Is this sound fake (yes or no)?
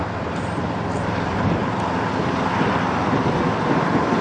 no